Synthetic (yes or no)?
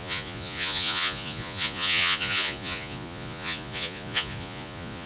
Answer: yes